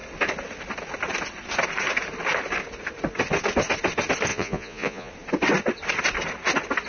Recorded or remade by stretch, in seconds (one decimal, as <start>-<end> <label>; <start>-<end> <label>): 0.0-4.3 recorded; 4.3-5.1 remade; 5.1-6.9 recorded